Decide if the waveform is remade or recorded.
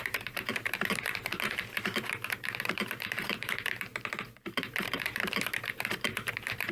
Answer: remade